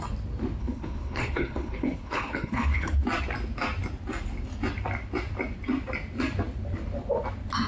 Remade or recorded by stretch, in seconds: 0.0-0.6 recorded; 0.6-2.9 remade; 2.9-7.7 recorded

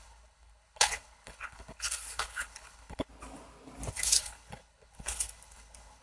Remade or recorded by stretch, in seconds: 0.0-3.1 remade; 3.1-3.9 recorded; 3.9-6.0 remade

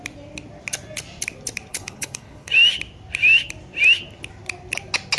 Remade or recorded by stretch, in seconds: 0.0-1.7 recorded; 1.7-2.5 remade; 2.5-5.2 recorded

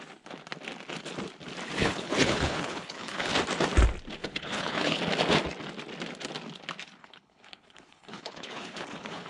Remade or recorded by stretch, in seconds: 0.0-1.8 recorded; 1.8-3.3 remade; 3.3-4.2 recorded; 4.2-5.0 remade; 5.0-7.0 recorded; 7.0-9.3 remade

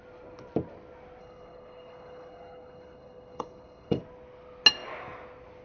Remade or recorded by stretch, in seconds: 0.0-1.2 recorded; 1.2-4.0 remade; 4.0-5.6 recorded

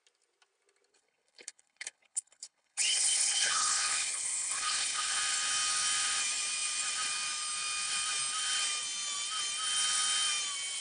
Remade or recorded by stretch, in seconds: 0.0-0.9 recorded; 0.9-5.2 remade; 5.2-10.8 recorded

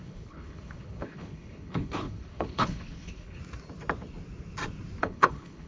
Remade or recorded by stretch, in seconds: 0.0-3.4 remade; 3.4-5.0 recorded; 5.0-5.7 remade

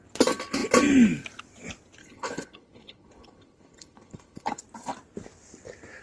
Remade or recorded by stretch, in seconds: 0.0-2.0 recorded; 2.0-4.6 remade; 4.6-6.0 recorded